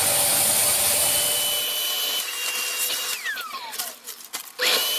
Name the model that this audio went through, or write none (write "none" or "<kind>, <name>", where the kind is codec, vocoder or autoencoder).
none